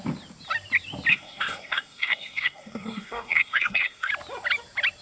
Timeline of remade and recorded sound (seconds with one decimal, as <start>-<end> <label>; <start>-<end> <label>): 0.0-1.1 recorded; 1.1-4.1 remade; 4.1-5.0 recorded

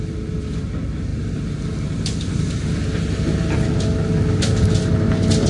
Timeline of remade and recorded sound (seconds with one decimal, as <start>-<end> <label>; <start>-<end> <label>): 0.0-5.5 recorded